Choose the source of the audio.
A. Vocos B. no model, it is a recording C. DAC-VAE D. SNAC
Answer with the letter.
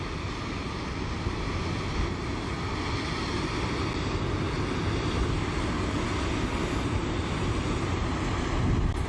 B